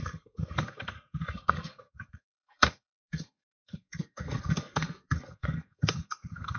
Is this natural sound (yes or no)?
no